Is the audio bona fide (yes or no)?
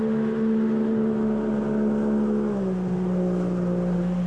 yes